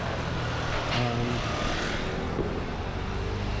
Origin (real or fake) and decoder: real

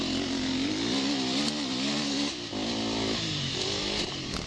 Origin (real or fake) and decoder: real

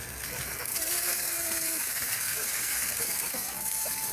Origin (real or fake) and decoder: fake, codec, SNAC